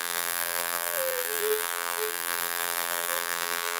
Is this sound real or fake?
fake